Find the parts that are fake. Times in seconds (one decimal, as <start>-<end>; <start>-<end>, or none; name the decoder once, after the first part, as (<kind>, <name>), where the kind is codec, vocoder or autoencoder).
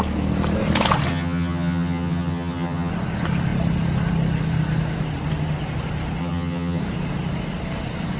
1.1-2.9 (vocoder, HiFi-GAN); 6.2-6.8